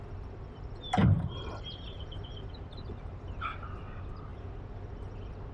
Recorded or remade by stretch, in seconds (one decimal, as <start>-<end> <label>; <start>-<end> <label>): 0.0-1.0 recorded; 1.0-3.5 remade; 3.5-5.5 recorded